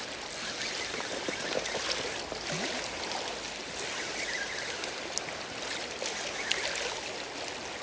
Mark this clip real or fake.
real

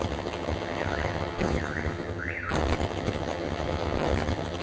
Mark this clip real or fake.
fake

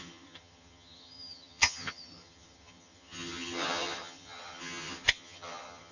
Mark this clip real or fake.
fake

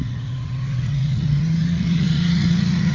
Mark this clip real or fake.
fake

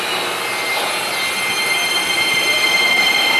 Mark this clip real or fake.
real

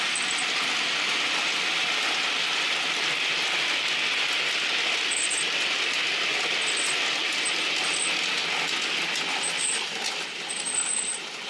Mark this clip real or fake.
real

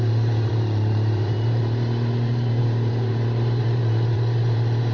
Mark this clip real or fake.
fake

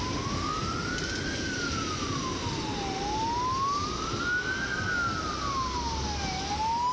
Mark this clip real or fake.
real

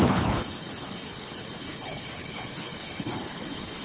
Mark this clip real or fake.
fake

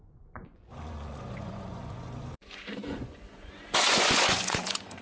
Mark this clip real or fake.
fake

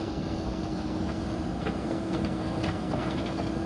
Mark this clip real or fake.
fake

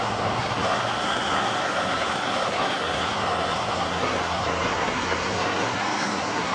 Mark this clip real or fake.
fake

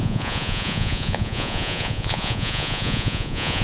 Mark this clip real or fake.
fake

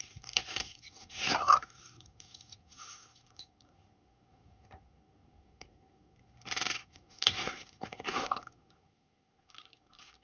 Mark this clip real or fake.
fake